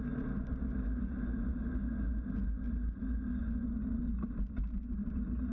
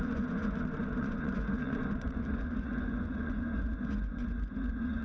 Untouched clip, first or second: first